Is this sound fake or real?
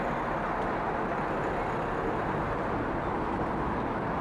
real